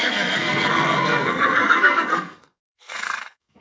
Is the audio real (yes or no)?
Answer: no